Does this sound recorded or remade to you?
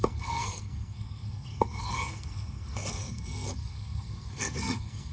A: remade